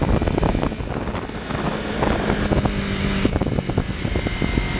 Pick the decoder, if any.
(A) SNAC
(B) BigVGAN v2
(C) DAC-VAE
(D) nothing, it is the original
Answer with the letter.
D